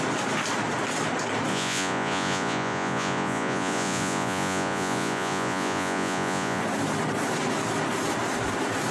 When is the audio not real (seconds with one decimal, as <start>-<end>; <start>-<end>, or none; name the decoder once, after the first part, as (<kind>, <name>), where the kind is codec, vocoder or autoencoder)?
1.5-6.6 (vocoder, Vocos)